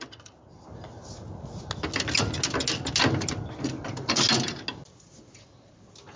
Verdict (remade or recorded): recorded